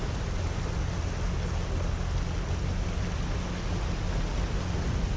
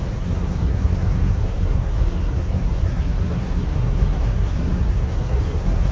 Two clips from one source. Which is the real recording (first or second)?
first